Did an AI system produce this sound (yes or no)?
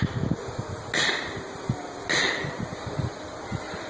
no